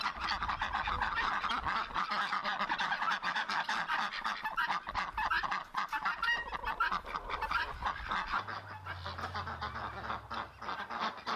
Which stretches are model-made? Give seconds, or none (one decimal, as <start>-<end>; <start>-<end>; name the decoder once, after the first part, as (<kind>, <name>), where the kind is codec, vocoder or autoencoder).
2.4-3.0 (vocoder, BigVGAN v2)